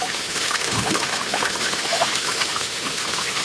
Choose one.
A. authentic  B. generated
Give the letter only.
B